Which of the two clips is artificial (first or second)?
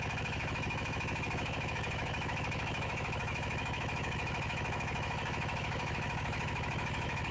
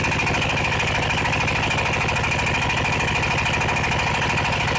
first